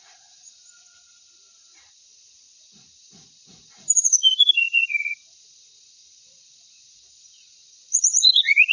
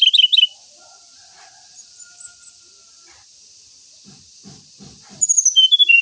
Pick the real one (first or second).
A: second